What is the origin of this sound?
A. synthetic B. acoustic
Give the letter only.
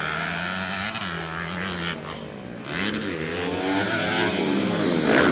B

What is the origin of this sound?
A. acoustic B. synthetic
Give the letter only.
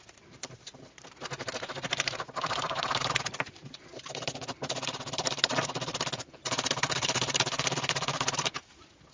B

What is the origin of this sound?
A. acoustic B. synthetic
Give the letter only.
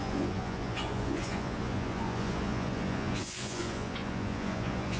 B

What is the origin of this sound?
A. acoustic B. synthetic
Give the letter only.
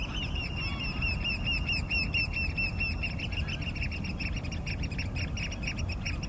A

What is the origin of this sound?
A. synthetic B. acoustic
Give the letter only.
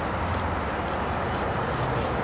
B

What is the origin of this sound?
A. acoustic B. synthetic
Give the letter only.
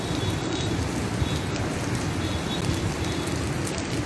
A